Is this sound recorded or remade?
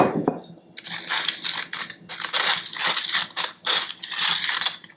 recorded